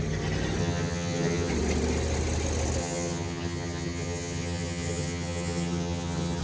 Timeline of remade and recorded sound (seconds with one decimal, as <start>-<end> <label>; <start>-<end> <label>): 0.0-0.6 recorded; 0.6-1.5 remade; 1.5-2.8 recorded; 2.8-6.4 remade